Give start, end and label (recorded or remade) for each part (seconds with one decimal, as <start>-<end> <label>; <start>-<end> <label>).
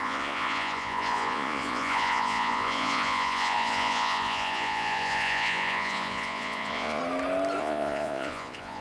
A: 0.0-7.0 remade; 7.0-7.6 recorded; 7.6-8.8 remade